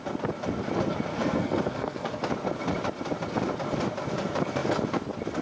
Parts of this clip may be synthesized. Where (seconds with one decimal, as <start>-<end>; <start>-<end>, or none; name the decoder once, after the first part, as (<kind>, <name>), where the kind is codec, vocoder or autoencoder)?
1.1-2.2 (codec, SNAC)